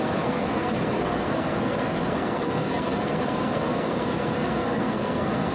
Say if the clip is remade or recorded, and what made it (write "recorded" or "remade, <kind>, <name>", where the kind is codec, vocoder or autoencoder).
remade, codec, SNAC